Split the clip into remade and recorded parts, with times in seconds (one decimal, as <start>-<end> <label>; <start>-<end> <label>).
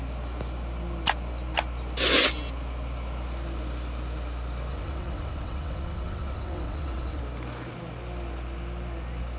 0.0-4.7 recorded; 4.7-7.2 remade; 7.2-9.4 recorded